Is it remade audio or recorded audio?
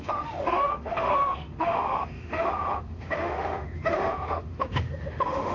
remade